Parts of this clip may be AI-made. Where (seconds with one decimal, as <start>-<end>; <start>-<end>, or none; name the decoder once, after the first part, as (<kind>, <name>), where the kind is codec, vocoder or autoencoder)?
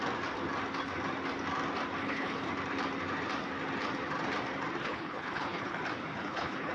2.0-2.5 (codec, HILCodec); 4.8-5.8; 6.2-6.7